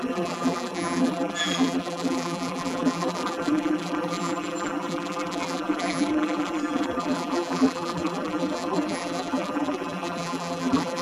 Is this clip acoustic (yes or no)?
no